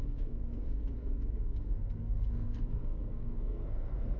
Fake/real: fake